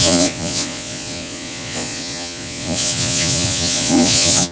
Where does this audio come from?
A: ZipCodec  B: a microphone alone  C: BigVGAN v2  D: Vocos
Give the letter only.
D